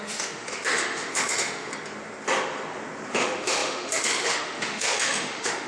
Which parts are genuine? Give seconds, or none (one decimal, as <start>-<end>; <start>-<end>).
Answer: 1.7-3.1